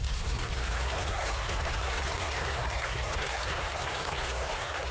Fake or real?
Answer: fake